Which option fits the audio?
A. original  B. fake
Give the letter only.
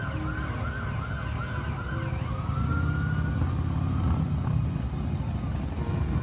A